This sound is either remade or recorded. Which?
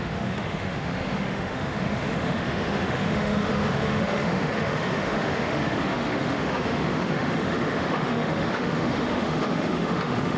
remade